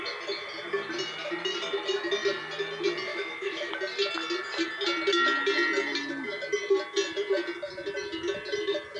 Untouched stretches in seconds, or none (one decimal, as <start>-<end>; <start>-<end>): 0.0-3.1; 3.7-9.0